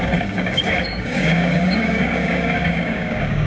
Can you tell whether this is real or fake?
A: fake